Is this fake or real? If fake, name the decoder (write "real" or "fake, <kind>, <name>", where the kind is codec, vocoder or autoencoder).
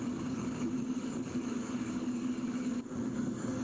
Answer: fake, codec, DAC